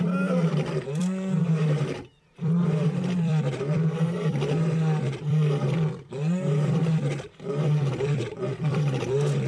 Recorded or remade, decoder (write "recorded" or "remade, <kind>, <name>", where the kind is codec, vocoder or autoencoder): remade, vocoder, BigVGAN v2